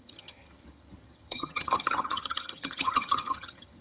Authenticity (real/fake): fake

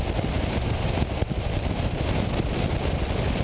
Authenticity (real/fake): real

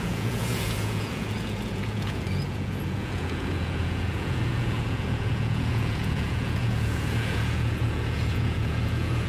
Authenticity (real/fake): fake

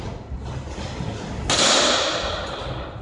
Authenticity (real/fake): real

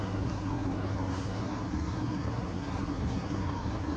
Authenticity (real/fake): fake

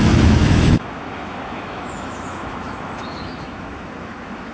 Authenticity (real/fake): fake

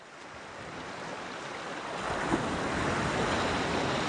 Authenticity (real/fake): real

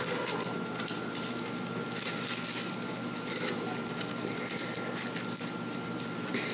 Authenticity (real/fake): real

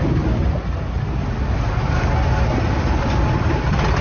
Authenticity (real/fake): real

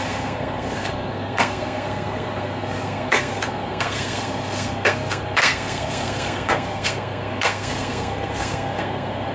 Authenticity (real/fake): fake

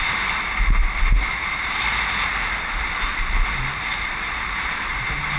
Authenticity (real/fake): fake